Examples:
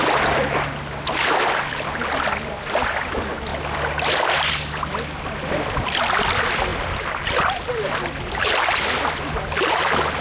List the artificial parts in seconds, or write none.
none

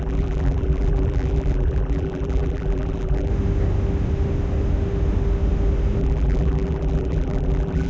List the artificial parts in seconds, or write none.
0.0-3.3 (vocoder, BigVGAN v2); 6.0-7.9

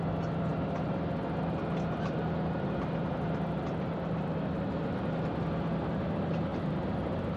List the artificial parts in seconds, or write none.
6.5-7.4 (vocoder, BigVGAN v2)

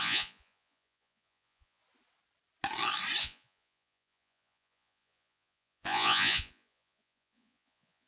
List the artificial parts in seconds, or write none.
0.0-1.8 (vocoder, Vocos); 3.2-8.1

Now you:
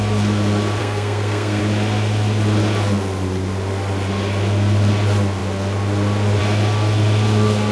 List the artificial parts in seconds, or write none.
0.8-1.6 (codec, SNAC)

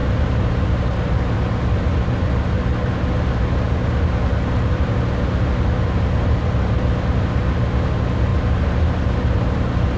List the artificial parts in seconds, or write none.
none